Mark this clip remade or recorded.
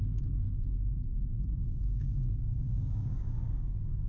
remade